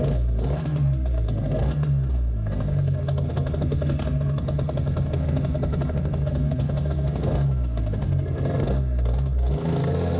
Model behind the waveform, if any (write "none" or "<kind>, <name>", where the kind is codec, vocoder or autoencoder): codec, SNAC